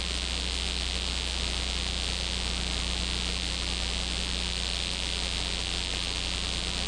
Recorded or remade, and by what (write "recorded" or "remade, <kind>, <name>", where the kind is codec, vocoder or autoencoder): recorded